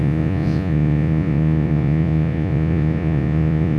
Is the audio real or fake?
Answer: fake